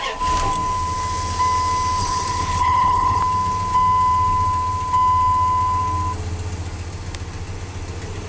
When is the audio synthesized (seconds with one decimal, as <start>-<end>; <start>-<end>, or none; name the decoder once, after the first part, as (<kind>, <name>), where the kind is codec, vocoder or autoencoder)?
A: 2.0-3.2 (codec, HILCodec)